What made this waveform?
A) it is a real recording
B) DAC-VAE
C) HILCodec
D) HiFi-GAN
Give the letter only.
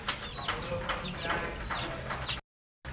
A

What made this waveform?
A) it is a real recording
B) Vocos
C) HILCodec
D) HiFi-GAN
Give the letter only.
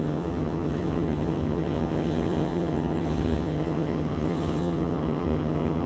D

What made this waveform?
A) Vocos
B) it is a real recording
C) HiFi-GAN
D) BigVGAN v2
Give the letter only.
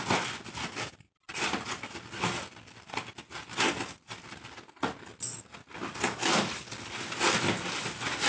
B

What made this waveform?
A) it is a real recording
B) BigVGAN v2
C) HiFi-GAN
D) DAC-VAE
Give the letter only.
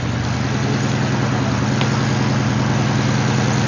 A